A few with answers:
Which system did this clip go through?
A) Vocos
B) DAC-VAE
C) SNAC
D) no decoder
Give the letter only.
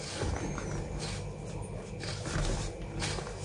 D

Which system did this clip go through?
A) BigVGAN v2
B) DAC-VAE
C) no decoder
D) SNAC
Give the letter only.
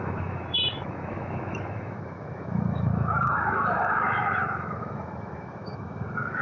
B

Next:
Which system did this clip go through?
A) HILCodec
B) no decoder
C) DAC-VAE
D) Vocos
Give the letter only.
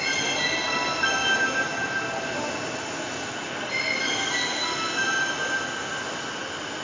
B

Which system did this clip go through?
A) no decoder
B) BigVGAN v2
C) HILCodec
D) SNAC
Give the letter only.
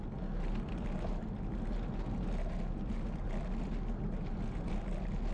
A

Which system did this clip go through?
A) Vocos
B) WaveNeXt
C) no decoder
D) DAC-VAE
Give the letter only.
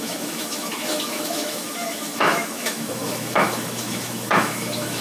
D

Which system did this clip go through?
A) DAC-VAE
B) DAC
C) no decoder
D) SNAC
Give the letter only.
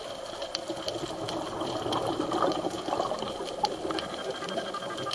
C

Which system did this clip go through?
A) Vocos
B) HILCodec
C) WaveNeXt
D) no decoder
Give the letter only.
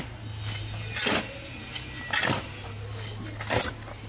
D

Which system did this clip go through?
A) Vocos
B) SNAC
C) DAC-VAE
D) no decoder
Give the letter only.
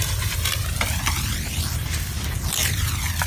D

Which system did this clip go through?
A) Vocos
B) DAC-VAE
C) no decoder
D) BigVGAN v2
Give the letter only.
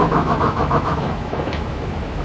B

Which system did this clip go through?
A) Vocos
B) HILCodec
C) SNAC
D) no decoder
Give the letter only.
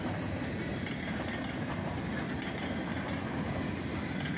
D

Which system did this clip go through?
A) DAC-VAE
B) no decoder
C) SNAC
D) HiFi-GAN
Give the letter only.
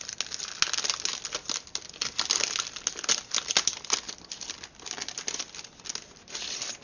B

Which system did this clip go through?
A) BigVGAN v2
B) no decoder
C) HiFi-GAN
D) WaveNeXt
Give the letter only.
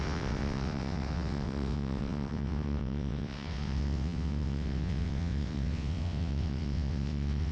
D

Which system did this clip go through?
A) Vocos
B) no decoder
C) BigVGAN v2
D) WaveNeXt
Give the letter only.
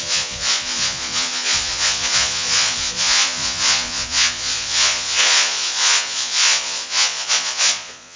A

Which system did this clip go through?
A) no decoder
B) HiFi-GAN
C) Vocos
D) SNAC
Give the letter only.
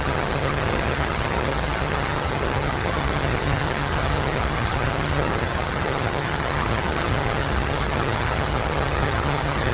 B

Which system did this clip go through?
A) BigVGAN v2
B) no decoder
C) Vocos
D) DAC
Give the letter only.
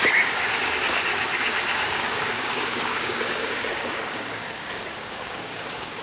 D